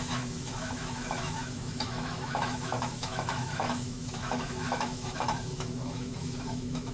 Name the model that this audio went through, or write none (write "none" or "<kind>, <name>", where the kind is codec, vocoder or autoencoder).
autoencoder, DAC-VAE